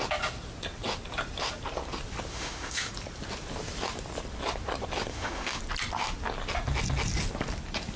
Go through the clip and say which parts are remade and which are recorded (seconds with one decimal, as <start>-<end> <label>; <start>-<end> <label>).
0.0-2.3 recorded; 2.3-2.9 remade; 2.9-5.1 recorded; 5.1-5.6 remade; 5.6-8.0 recorded